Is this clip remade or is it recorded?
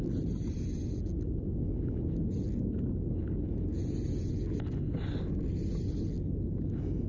recorded